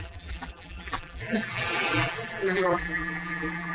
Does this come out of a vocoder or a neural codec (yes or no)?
yes